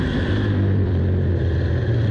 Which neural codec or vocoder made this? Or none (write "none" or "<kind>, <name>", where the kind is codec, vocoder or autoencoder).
vocoder, BigVGAN v2